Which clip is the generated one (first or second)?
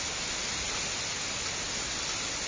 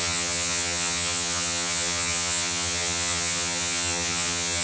second